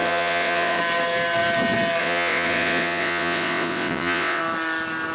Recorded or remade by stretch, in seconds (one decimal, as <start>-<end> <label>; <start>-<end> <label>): 0.0-0.8 remade; 0.8-2.0 recorded; 2.0-4.4 remade; 4.4-5.1 recorded